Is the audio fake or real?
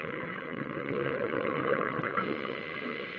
fake